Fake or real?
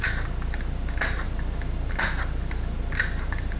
real